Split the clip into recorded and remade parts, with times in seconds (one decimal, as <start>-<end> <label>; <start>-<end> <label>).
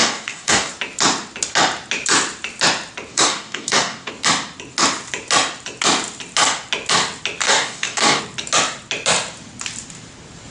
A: 0.0-0.7 remade; 0.7-3.1 recorded; 3.1-4.1 remade; 4.1-7.4 recorded; 7.4-8.2 remade; 8.2-10.5 recorded